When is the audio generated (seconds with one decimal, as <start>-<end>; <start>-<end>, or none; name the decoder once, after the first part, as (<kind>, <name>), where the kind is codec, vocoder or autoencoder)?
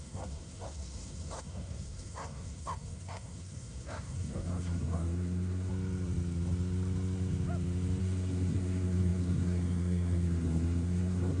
0.0-5.7 (codec, SNAC); 8.0-11.4